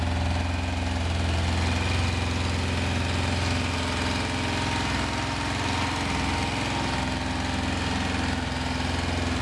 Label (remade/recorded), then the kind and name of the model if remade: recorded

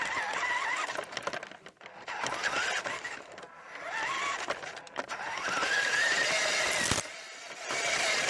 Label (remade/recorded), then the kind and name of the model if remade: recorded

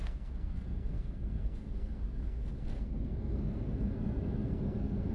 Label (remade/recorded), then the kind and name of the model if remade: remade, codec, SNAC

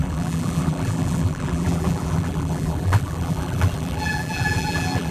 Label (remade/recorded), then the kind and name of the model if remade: remade, vocoder, BigVGAN v2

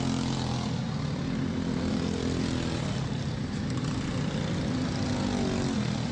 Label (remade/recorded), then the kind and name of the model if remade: recorded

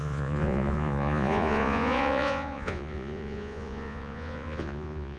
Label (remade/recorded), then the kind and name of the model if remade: remade, vocoder, Vocos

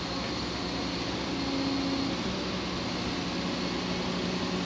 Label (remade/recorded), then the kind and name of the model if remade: recorded